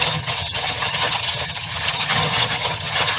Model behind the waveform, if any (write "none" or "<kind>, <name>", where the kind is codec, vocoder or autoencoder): vocoder, HiFi-GAN